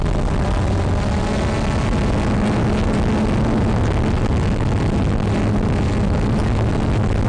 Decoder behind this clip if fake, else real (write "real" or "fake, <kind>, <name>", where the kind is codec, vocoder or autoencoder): real